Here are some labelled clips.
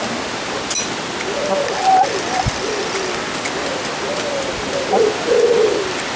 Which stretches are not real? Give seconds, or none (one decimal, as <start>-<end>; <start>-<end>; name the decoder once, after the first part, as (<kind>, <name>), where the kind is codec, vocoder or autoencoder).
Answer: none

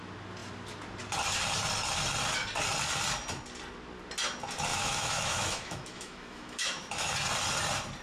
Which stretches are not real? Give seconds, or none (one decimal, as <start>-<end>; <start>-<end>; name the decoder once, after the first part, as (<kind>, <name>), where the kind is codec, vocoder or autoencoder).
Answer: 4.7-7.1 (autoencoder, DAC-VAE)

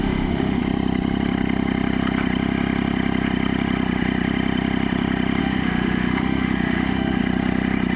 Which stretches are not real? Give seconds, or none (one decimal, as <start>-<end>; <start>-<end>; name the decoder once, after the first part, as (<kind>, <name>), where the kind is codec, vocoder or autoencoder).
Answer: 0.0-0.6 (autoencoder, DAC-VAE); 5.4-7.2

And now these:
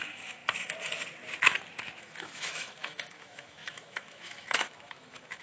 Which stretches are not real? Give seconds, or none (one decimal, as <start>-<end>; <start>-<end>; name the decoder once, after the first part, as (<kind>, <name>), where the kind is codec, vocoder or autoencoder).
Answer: 0.0-0.4 (autoencoder, DAC-VAE); 2.0-5.4

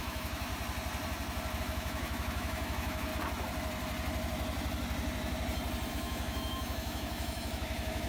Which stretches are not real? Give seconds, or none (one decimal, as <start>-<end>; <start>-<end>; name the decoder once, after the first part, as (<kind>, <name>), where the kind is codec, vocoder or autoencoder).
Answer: 0.0-0.5 (autoencoder, DAC-VAE); 1.6-3.1; 5.9-8.1